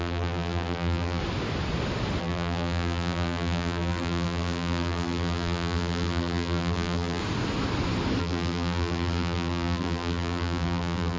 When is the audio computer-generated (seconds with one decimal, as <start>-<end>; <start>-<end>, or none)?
0.0-1.2; 2.2-7.2; 8.2-11.2